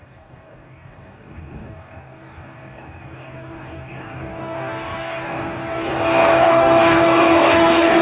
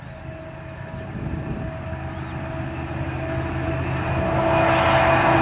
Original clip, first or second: second